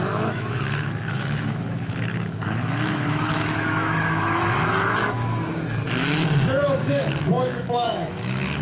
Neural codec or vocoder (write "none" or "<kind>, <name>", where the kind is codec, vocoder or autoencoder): autoencoder, DAC-VAE